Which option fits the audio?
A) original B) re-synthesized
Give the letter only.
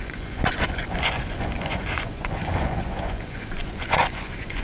B